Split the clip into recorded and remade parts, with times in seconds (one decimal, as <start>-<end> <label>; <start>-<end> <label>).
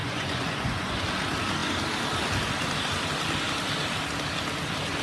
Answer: 0.0-1.0 remade; 1.0-5.0 recorded